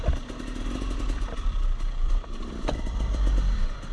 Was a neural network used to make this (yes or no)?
yes